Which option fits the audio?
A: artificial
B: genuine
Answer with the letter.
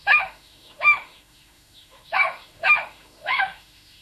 A